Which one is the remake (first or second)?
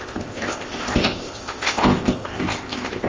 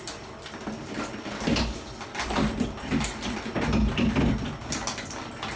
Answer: first